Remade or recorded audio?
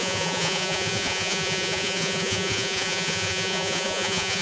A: remade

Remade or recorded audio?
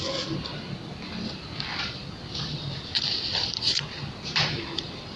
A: remade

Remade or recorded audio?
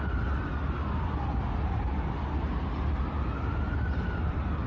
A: recorded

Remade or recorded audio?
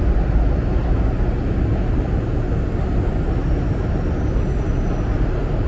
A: recorded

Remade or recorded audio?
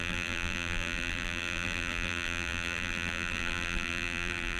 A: remade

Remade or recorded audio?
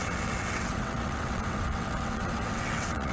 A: remade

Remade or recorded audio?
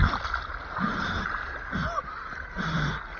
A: recorded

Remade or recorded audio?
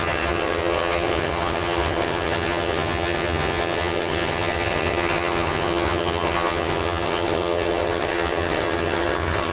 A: remade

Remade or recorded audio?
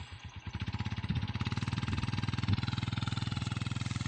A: recorded